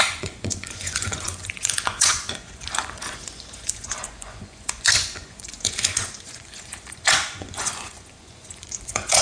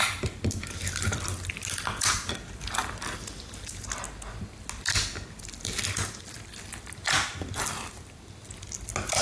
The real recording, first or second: second